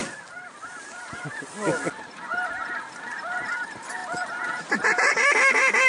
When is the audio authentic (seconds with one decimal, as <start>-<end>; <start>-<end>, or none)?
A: 0.0-5.9